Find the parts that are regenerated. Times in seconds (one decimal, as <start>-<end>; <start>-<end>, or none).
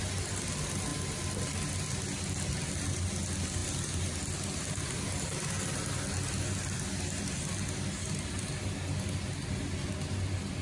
none